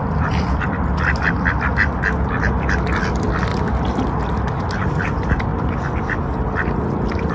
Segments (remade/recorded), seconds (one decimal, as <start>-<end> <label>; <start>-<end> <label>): 0.0-7.3 recorded